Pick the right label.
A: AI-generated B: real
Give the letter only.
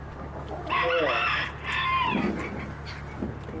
B